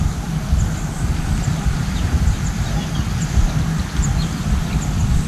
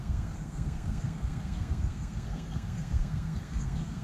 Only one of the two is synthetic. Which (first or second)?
second